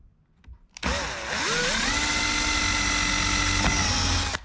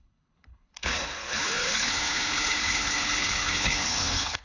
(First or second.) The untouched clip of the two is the first